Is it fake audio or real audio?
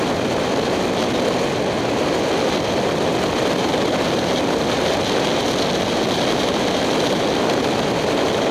real